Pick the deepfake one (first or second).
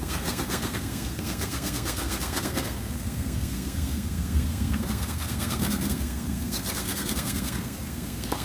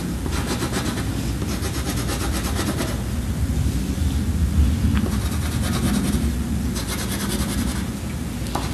first